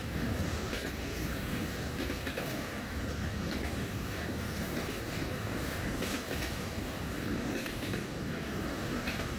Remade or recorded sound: remade